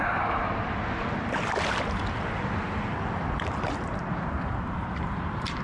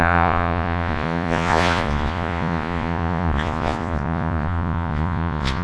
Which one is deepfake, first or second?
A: second